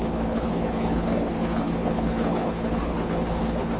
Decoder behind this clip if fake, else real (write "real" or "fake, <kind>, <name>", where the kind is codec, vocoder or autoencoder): fake, codec, HILCodec